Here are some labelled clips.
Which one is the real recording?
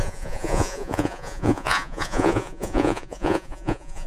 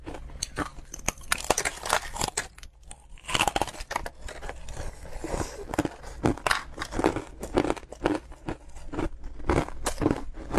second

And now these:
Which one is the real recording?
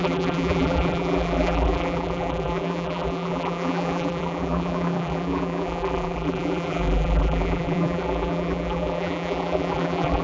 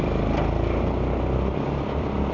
second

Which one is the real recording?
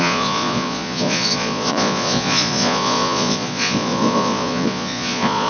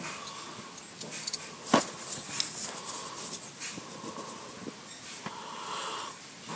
second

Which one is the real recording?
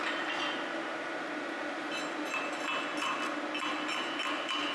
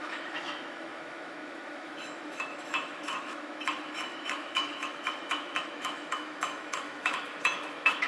first